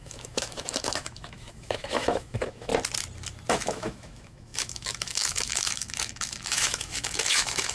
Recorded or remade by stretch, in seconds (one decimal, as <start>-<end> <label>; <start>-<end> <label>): 0.0-2.7 remade; 2.7-3.5 recorded; 3.5-7.7 remade